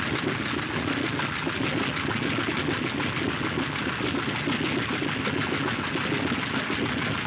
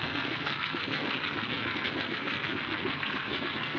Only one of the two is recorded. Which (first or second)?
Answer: first